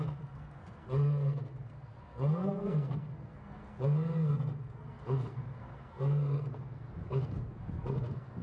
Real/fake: fake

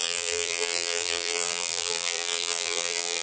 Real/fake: fake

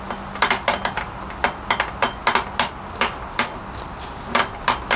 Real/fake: real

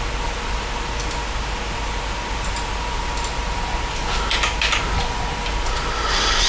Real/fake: real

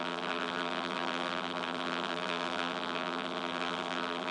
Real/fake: fake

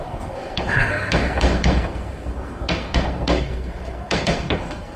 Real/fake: fake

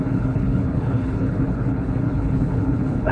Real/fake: fake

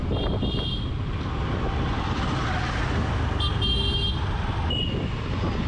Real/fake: real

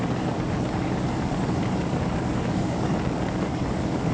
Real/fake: fake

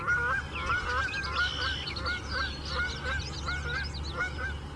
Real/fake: real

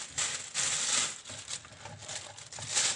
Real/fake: real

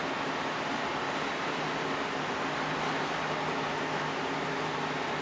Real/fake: real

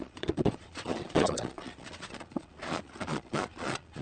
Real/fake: fake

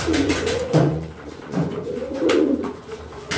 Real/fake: fake